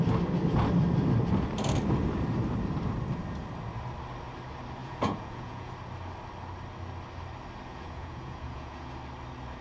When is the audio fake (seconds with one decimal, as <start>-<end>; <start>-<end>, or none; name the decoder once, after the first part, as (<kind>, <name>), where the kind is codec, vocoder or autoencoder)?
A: 4.8-5.7 (vocoder, Vocos); 7.7-8.9